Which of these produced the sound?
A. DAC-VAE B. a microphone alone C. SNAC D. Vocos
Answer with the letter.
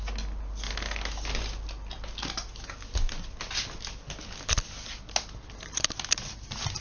B